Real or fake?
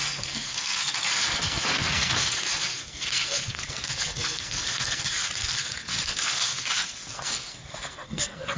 fake